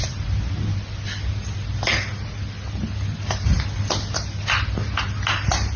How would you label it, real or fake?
real